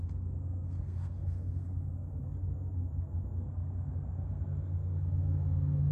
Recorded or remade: remade